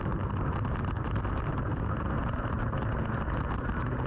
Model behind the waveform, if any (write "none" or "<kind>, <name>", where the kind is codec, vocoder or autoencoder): none